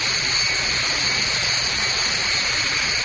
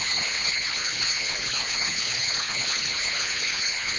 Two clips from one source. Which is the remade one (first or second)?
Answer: second